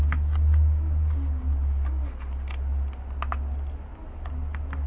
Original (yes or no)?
yes